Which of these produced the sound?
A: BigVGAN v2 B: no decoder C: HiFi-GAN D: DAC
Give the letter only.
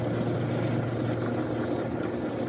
B